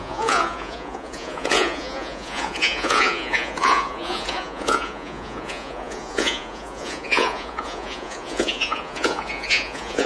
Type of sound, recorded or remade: remade